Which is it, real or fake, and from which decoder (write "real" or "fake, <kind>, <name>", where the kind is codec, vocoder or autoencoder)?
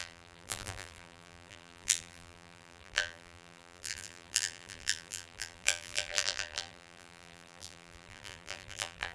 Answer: fake, vocoder, BigVGAN v2